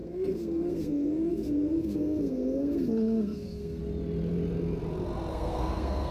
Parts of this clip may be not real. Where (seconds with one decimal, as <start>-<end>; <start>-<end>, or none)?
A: 0.0-3.8; 5.3-6.1